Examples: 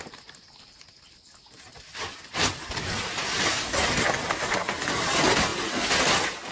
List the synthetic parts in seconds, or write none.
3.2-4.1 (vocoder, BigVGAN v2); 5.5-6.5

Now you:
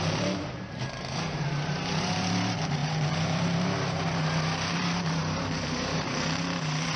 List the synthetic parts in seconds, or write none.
0.0-7.0 (vocoder, BigVGAN v2)

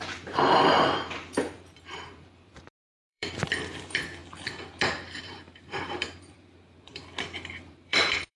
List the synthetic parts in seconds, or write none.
0.0-4.2 (vocoder, BigVGAN v2); 5.2-7.0; 7.7-8.4

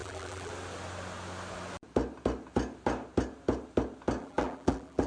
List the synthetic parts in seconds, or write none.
0.0-0.5 (vocoder, BigVGAN v2); 4.2-5.1